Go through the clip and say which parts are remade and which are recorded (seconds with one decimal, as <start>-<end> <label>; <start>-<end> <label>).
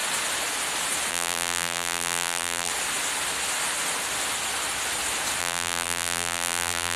0.0-1.1 recorded; 1.1-2.7 remade; 2.7-5.4 recorded; 5.4-7.0 remade